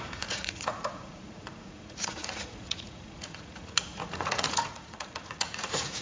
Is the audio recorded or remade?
remade